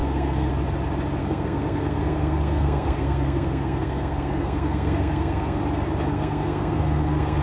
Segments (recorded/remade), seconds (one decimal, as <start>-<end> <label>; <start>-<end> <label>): 0.0-0.5 remade; 0.5-1.2 recorded; 1.2-5.6 remade; 5.6-6.1 recorded; 6.1-7.4 remade